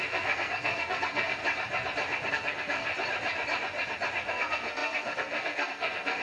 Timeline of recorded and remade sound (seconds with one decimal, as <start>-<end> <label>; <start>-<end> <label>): 0.0-1.4 remade; 1.4-2.3 recorded; 2.3-2.9 remade; 2.9-4.3 recorded; 4.3-6.2 remade